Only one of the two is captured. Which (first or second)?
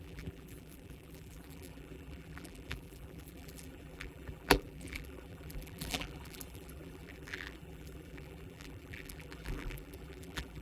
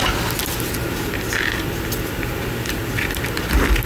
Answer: second